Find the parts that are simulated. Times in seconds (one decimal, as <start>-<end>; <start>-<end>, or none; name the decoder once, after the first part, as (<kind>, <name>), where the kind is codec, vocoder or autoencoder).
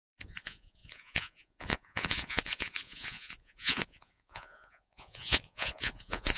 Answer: 0.0-6.4 (vocoder, Vocos)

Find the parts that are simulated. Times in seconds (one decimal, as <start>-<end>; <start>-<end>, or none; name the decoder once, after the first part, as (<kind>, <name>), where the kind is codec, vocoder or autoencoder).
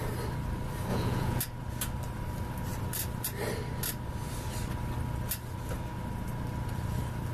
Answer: 0.9-1.4 (vocoder, Vocos)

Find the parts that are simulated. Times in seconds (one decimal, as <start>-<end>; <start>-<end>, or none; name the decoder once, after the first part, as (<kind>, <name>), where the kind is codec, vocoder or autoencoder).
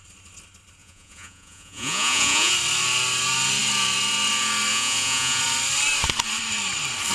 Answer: 0.8-2.5 (vocoder, Vocos); 4.7-5.4